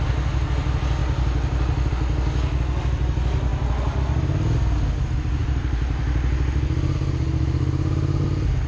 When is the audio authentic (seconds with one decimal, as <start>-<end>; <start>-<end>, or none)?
0.0-5.4; 6.0-8.7